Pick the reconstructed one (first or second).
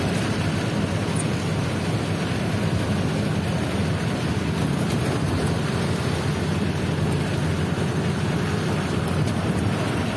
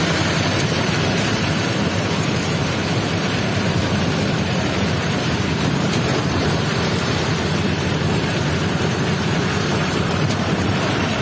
second